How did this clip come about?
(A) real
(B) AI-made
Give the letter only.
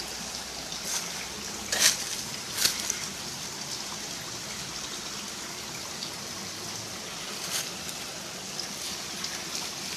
B